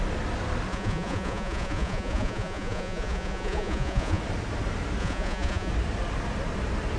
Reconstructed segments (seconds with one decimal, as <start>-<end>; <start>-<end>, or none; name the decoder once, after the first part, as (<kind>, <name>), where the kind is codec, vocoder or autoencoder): 0.7-4.2 (vocoder, Vocos); 5.0-5.7